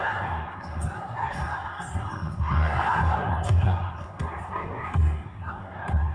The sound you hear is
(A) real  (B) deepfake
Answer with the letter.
B